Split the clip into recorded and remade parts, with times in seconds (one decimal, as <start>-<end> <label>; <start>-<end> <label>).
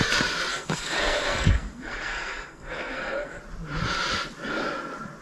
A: 0.0-0.5 recorded; 0.5-3.4 remade; 3.4-5.2 recorded